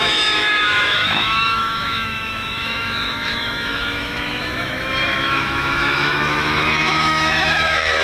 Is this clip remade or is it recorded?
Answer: remade